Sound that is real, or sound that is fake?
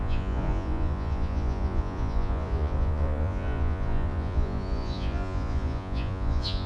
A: fake